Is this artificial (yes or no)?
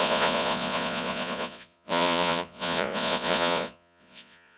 yes